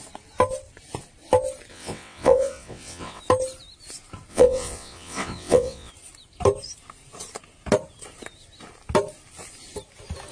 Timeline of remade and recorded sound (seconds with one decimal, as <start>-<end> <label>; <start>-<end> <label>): 0.0-1.7 recorded; 1.7-3.2 remade; 3.2-4.3 recorded; 4.3-5.9 remade; 5.9-10.3 recorded